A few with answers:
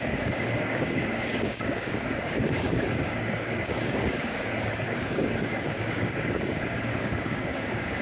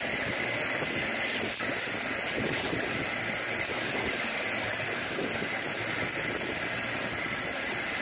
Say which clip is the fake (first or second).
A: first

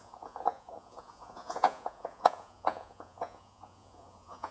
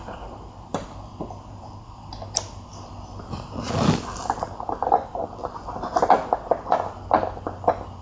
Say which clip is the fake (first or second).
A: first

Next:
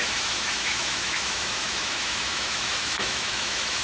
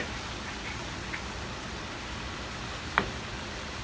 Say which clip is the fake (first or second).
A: first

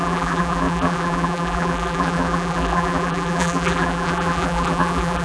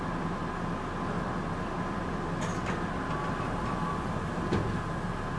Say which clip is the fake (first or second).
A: first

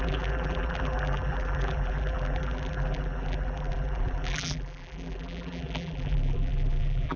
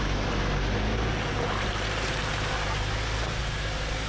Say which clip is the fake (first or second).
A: first